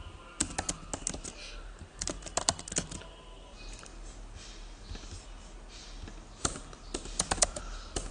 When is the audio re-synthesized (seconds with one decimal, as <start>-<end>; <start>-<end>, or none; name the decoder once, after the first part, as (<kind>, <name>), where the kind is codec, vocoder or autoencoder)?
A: none